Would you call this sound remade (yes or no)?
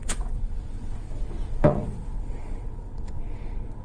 yes